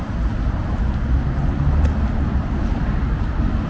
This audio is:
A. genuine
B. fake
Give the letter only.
A